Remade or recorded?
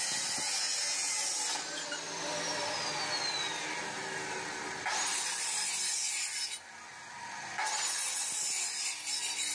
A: recorded